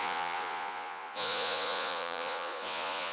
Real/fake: fake